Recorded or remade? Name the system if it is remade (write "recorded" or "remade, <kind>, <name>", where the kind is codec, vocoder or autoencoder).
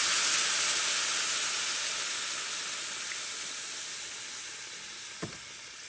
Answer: recorded